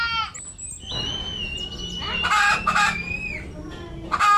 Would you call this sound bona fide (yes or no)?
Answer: yes